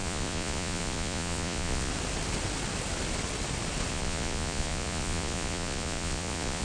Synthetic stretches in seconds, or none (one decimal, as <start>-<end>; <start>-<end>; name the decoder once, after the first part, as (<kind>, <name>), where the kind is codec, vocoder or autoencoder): 0.0-1.9 (vocoder, Vocos); 3.9-6.6